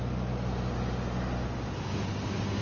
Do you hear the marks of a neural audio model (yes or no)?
no